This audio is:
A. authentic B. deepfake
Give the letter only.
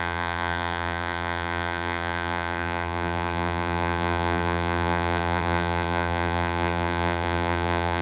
B